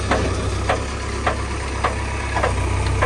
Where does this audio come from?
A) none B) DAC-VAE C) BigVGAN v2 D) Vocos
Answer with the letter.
A